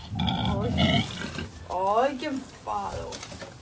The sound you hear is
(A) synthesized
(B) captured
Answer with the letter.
B